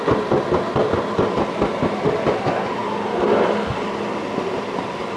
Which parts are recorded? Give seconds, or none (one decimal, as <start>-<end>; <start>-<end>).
0.0-5.2